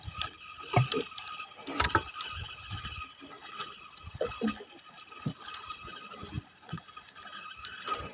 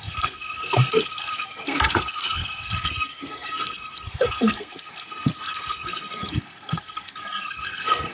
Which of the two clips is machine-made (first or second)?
second